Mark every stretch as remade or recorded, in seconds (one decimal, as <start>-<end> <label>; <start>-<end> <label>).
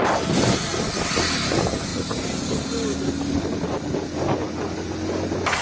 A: 0.0-5.6 recorded